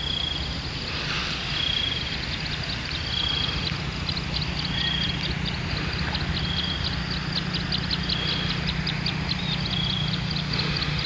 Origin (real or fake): real